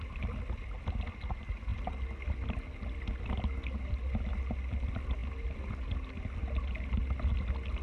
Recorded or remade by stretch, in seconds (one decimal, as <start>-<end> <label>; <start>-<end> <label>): 0.0-7.8 recorded

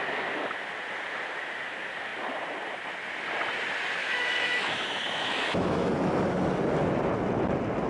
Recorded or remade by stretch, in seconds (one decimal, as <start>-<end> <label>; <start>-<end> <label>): 0.0-4.0 recorded; 4.0-5.9 remade; 5.9-7.9 recorded

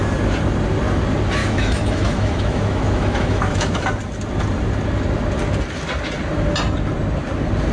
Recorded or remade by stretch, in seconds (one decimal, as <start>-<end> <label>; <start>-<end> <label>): 0.0-1.4 recorded; 1.4-3.9 remade; 3.9-7.7 recorded

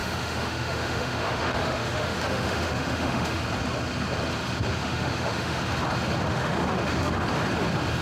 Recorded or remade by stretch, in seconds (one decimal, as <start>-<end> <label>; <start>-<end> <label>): 0.0-3.4 remade; 3.4-4.8 recorded; 4.8-5.6 remade; 5.6-6.3 recorded; 6.3-7.2 remade; 7.2-8.0 recorded

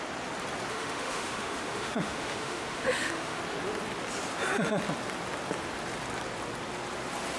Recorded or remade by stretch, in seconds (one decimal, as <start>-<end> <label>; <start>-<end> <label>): 0.0-0.7 recorded; 0.7-3.4 remade; 3.4-7.4 recorded

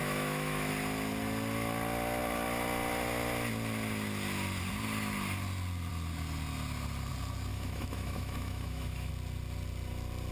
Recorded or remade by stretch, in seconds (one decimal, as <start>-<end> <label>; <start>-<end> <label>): 0.0-0.7 remade; 0.7-7.5 recorded; 7.5-9.1 remade; 9.1-10.3 recorded

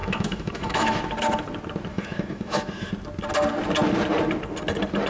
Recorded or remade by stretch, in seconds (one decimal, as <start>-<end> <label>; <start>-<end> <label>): 0.0-1.0 remade; 1.0-1.9 recorded; 1.9-2.9 remade; 2.9-5.1 recorded

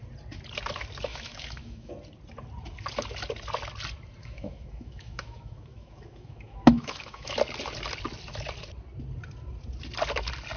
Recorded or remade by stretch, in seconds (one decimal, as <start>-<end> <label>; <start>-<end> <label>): 0.0-1.1 recorded; 1.1-1.9 remade; 1.9-4.2 recorded; 4.2-7.3 remade; 7.3-10.6 recorded